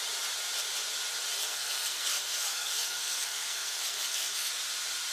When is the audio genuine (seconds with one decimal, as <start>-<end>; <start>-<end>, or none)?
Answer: 0.0-1.4; 4.5-5.1